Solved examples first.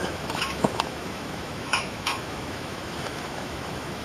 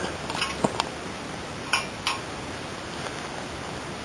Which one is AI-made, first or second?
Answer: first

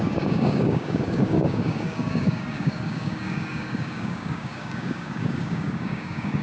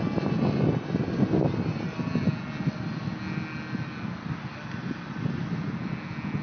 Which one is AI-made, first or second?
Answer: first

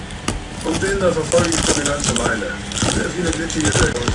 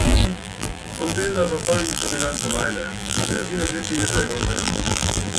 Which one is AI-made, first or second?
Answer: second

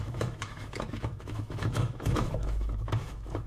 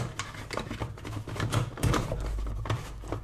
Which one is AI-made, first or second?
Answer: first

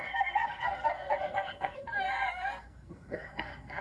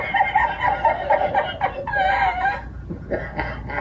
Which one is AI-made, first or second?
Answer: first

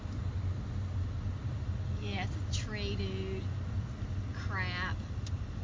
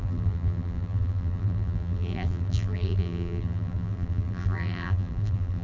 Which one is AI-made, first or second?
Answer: second